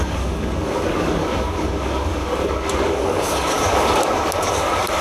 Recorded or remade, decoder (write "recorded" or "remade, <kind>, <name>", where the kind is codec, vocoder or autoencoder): remade, codec, DAC